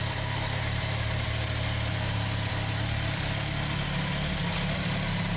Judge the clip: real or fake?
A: real